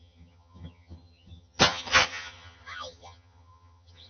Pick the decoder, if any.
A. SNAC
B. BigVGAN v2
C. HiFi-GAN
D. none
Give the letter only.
C